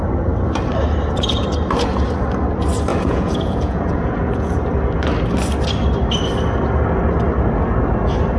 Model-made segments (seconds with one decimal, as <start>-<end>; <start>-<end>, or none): 2.9-4.6